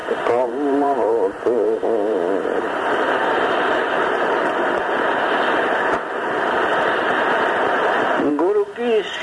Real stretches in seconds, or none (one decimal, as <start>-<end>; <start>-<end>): 4.5-6.7; 8.3-9.2